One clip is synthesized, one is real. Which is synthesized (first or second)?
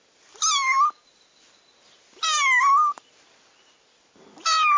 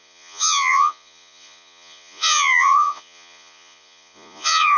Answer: second